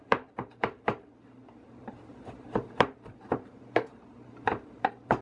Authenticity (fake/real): fake